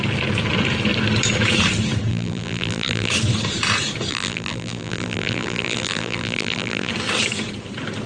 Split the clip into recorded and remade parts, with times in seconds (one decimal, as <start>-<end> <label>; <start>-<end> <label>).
0.0-2.1 recorded; 2.1-3.1 remade; 3.1-4.1 recorded; 4.1-6.9 remade; 6.9-8.1 recorded